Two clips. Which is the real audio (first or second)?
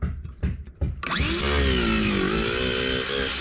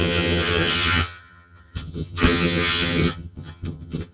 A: first